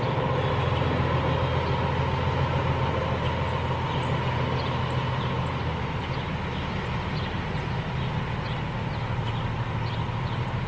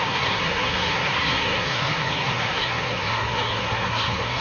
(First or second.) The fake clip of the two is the second